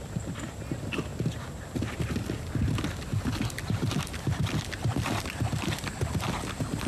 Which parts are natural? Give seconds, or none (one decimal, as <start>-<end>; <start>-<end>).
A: 0.0-6.9